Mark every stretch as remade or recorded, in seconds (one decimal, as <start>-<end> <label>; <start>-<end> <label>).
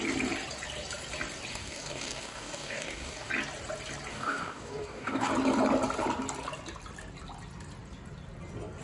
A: 0.0-1.5 recorded; 1.5-3.3 remade; 3.3-4.1 recorded; 4.1-5.3 remade; 5.3-8.8 recorded